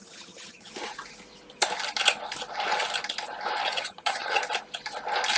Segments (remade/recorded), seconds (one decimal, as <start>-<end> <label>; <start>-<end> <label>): 0.0-0.7 remade; 0.7-3.7 recorded; 3.7-4.4 remade; 4.4-5.4 recorded